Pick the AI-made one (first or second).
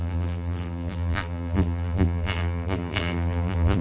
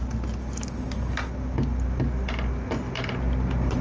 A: first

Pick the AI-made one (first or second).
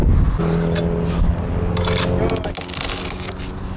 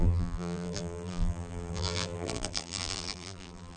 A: second